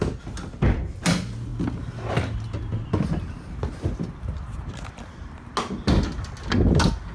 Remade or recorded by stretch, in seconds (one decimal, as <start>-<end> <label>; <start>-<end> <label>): 0.0-7.1 recorded